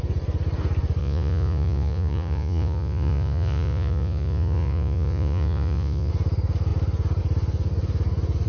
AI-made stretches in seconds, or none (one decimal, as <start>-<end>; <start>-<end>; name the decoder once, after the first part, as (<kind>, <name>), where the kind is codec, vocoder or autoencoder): 1.0-6.1 (vocoder, Vocos)